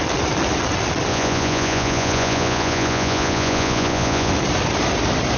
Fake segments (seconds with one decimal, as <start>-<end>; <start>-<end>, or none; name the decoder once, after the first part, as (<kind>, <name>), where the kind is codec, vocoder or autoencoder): 1.1-4.3 (vocoder, Vocos)